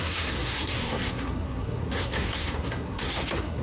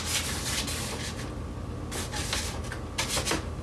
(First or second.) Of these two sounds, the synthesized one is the first